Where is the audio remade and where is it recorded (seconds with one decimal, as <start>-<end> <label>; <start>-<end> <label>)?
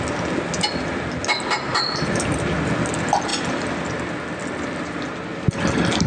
0.0-6.1 recorded